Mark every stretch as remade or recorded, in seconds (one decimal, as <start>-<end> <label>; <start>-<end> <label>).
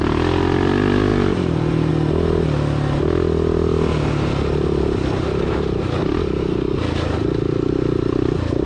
0.0-1.1 recorded; 1.1-1.9 remade; 1.9-8.7 recorded